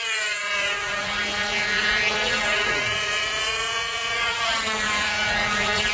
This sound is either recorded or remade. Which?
remade